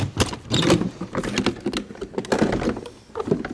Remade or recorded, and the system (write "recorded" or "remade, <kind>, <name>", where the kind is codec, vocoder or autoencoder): recorded